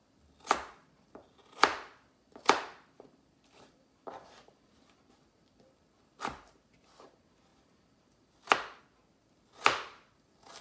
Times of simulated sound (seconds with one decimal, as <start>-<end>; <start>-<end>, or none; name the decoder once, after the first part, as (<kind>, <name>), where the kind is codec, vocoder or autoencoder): 1.7-5.1 (vocoder, BigVGAN v2); 7.5-8.8